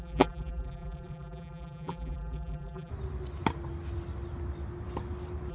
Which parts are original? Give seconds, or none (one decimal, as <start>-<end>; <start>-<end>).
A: 2.9-5.5